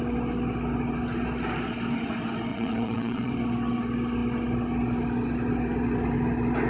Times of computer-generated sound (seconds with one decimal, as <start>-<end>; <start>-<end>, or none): 2.5-3.3